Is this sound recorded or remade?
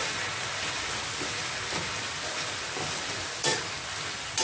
recorded